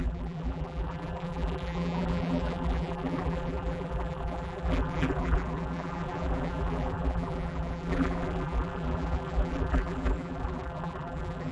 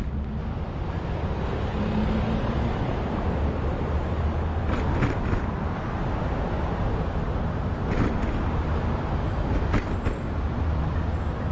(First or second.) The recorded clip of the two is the second